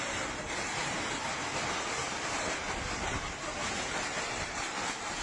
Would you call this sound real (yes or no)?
yes